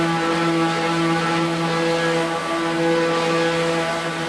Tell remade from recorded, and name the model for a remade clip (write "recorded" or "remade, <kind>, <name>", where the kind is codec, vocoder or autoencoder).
recorded